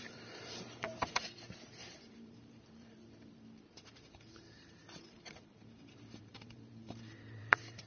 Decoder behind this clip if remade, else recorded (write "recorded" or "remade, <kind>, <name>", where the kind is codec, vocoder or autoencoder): remade, vocoder, BigVGAN v2